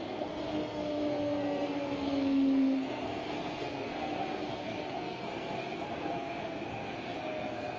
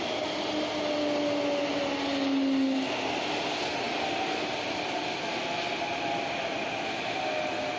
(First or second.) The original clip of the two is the second